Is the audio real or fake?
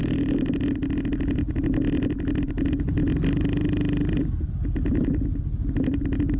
real